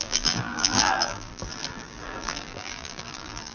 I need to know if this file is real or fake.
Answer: fake